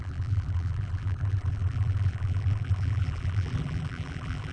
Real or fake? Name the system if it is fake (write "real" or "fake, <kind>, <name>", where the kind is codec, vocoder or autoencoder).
fake, vocoder, BigVGAN v2